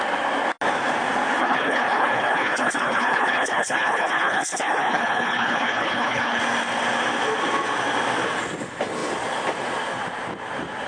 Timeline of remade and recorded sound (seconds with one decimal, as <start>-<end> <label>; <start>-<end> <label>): 0.0-1.4 recorded; 1.4-6.4 remade; 6.4-10.9 recorded